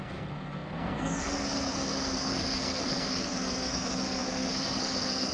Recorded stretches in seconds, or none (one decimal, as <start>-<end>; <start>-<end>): none